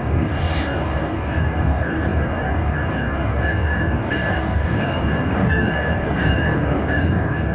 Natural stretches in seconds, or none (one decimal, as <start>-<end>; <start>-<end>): none